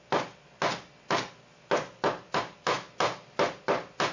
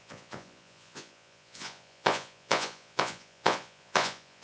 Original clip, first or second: first